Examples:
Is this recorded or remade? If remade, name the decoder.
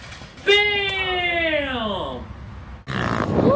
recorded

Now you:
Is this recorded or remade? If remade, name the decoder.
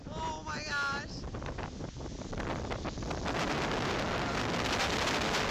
recorded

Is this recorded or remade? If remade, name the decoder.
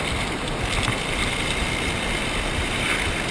remade, vocoder, BigVGAN v2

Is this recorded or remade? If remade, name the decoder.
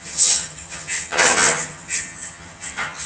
remade, vocoder, HiFi-GAN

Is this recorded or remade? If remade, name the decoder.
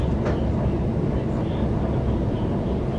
recorded